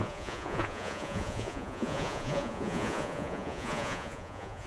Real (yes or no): no